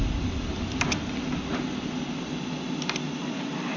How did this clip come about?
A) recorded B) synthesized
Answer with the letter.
A